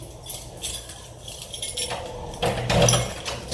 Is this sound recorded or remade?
recorded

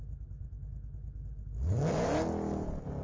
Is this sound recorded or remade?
recorded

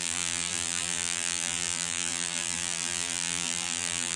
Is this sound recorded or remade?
remade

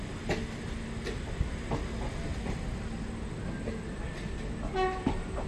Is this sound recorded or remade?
recorded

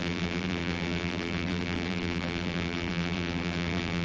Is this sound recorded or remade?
remade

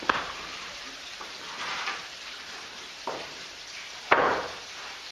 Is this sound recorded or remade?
remade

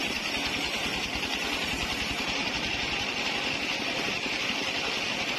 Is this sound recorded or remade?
remade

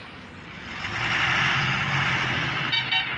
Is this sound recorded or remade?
recorded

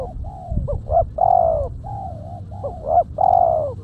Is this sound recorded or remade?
recorded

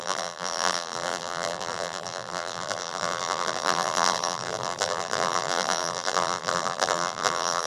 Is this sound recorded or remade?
remade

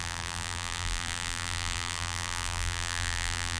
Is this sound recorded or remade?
remade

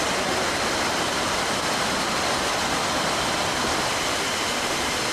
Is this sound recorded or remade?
recorded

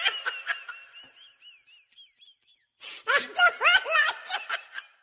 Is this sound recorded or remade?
recorded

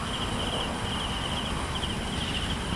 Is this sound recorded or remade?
recorded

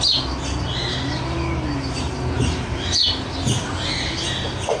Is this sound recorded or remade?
recorded